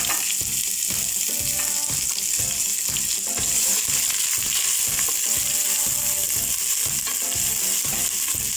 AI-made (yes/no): no